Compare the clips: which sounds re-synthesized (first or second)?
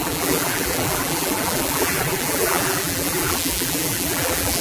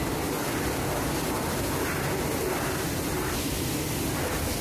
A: first